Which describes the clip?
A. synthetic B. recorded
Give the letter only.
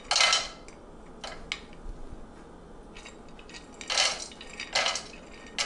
B